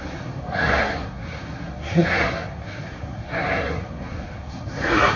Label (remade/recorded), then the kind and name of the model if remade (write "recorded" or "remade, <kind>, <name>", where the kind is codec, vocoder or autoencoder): remade, codec, SNAC